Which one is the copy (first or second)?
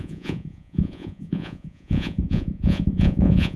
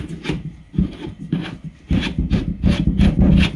first